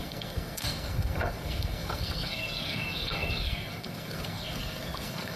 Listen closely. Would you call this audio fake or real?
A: fake